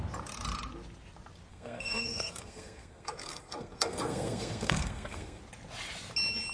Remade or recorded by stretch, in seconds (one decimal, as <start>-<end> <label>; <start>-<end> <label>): 0.0-1.5 recorded; 1.5-5.4 remade; 5.4-6.5 recorded